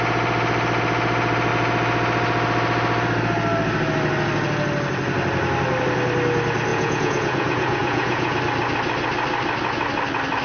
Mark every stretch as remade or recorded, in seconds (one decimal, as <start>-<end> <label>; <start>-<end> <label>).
0.0-6.7 recorded; 6.7-8.4 remade; 8.4-10.4 recorded